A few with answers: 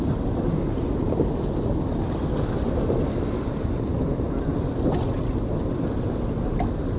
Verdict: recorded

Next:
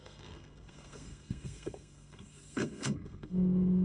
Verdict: remade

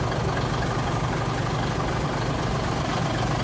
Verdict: recorded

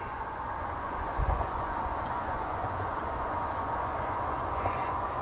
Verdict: remade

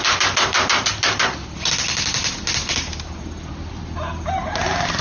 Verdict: recorded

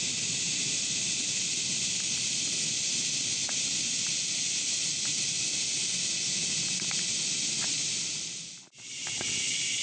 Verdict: recorded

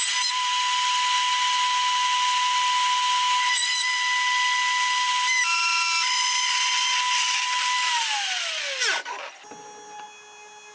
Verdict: recorded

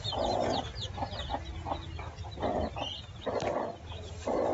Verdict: recorded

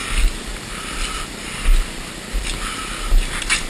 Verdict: recorded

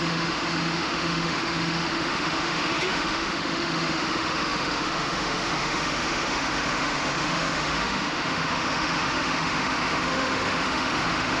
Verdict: remade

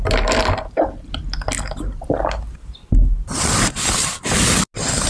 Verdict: recorded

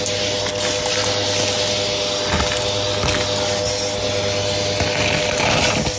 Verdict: recorded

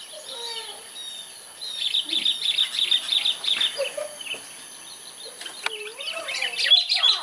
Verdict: recorded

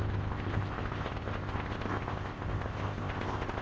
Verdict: remade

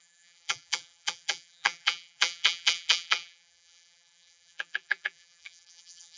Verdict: remade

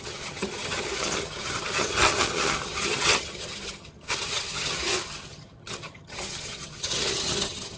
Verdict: remade